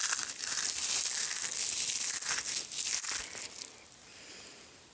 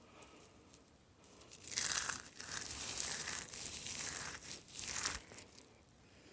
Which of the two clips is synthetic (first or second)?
second